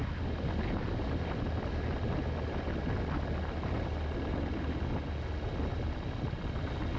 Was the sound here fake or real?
real